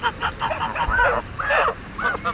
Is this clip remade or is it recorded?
remade